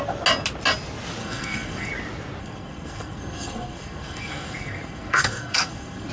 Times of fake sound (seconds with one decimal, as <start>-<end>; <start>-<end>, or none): 1.2-1.9; 2.4-6.1